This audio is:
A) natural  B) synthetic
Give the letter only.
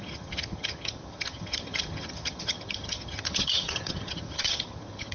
B